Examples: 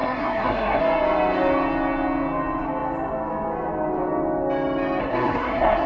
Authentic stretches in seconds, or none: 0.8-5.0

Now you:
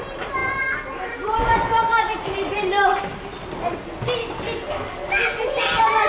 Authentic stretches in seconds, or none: 0.0-6.1

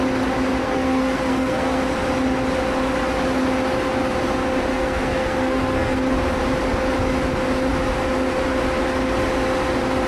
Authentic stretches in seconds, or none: 0.0-0.6; 1.8-4.7; 6.0-10.1

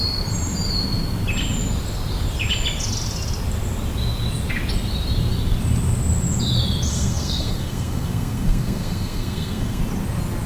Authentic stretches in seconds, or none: 0.0-6.9; 9.8-10.5

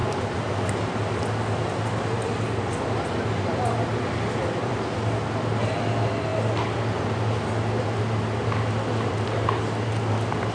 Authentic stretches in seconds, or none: 0.0-10.5

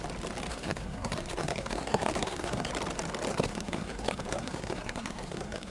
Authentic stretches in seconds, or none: 0.0-0.5; 2.7-3.3

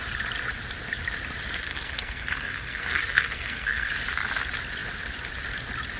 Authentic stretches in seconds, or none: 0.0-1.7; 3.9-6.0